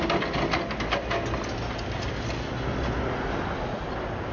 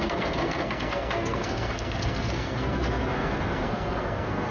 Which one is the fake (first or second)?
second